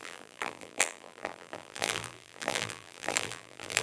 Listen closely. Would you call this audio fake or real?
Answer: fake